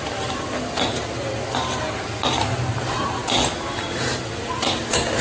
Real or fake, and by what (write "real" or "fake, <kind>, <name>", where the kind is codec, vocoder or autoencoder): real